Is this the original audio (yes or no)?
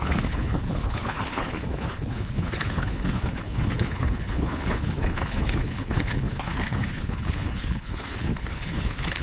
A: no